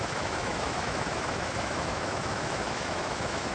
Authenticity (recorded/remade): remade